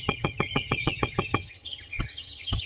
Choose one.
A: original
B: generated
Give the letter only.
B